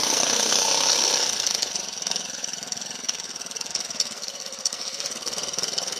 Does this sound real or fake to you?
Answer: fake